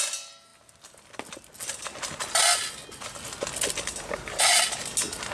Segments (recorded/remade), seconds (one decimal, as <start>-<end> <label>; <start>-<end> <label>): 0.0-5.3 recorded